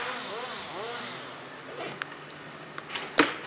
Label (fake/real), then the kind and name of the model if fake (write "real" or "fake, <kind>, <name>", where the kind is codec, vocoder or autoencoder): real